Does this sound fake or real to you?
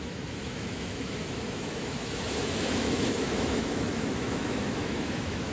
fake